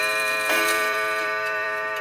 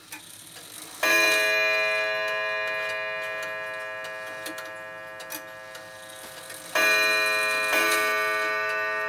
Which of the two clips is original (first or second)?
second